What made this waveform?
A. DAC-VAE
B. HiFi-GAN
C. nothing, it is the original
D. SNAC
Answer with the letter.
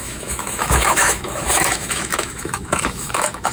A